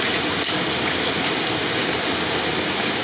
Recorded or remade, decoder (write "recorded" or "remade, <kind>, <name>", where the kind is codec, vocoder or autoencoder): recorded